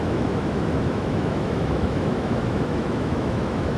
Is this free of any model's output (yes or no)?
no